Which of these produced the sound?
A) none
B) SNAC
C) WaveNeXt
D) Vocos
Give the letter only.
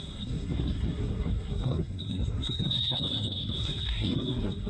B